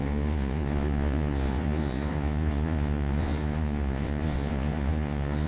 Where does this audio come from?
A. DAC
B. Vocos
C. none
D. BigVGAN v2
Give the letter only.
B